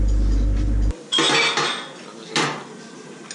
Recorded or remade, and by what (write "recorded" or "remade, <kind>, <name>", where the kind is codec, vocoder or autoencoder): recorded